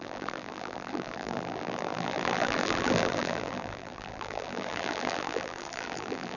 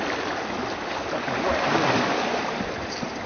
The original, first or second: second